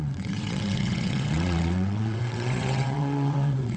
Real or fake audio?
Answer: fake